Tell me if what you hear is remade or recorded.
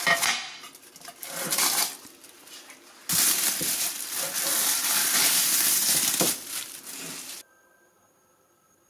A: remade